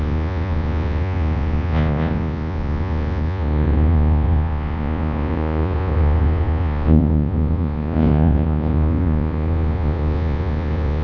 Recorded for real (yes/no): no